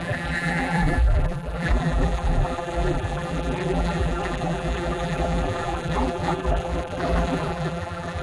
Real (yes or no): no